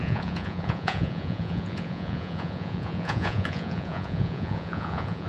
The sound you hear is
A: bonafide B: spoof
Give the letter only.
B